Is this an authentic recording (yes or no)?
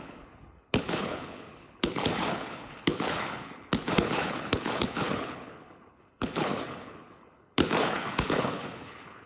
no